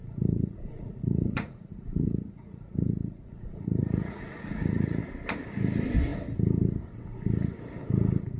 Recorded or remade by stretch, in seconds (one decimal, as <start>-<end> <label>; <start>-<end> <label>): 0.0-5.0 remade; 5.0-8.4 recorded